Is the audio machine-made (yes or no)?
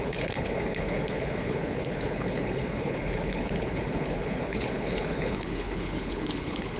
yes